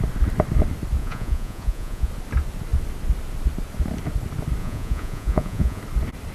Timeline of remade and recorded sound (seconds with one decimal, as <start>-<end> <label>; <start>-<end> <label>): 0.0-1.0 recorded; 1.0-2.1 remade; 2.1-4.6 recorded; 4.6-5.8 remade; 5.8-6.3 recorded